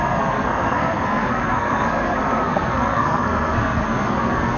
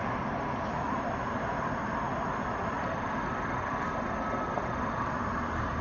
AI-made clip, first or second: first